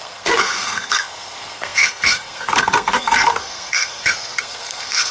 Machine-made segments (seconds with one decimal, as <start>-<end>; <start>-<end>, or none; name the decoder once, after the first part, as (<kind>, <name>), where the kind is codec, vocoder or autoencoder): 0.0-5.1 (codec, SNAC)